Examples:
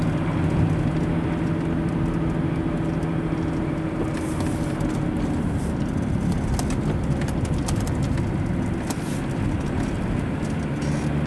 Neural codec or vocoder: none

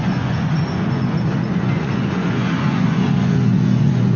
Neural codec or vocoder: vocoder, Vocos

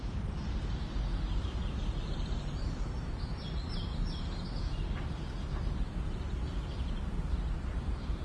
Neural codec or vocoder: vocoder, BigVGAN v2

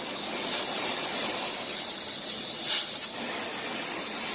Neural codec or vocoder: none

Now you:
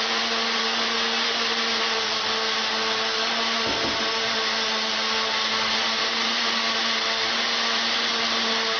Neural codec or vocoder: none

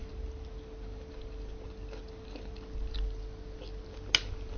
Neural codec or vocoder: none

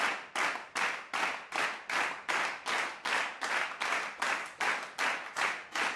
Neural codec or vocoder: none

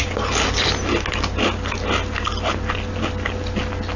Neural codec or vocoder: none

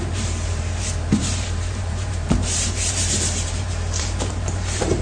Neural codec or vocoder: vocoder, BigVGAN v2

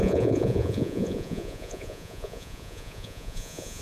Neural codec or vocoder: vocoder, Vocos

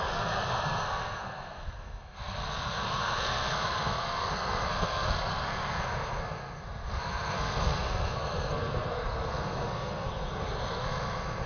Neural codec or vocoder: codec, SNAC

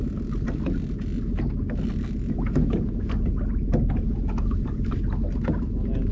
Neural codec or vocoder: none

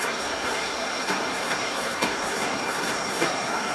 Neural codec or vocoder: codec, SNAC